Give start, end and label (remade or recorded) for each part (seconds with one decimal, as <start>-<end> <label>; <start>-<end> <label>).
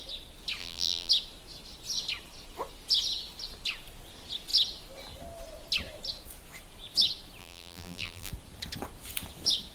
0.0-0.6 recorded; 0.6-1.1 remade; 1.1-7.4 recorded; 7.4-8.3 remade; 8.3-9.7 recorded